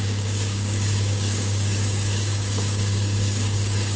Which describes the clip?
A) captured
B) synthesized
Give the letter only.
B